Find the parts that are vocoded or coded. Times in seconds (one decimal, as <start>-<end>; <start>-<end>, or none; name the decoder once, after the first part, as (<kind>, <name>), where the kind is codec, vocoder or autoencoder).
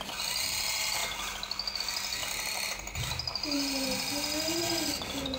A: none